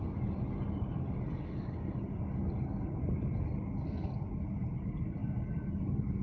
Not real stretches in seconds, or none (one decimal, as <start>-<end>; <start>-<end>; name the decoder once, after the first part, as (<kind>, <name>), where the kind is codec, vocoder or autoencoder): none